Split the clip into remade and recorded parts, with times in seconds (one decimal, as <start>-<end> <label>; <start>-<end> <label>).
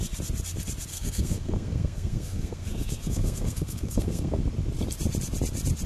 0.0-0.9 recorded; 0.9-4.4 remade; 4.4-5.9 recorded